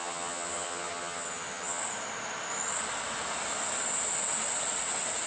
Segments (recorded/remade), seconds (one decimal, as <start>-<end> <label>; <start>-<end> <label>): 0.0-1.8 remade; 1.8-5.3 recorded